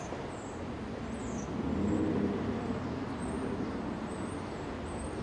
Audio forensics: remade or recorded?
recorded